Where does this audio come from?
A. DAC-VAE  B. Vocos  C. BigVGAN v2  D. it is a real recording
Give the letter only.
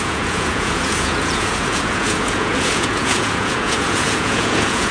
B